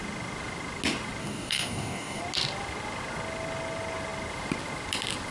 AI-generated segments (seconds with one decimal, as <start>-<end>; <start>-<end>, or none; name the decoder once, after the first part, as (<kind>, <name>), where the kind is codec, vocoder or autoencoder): 1.2-2.2 (codec, DAC)